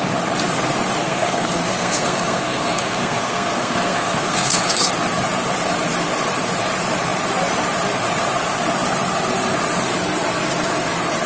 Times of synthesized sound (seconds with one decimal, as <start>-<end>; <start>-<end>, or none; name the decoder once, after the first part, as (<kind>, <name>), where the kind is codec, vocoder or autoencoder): 1.0-4.9 (codec, SNAC)